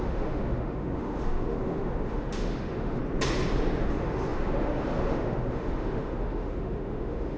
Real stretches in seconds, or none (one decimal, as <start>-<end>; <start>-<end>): 3.0-3.8